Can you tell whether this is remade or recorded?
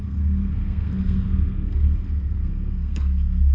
remade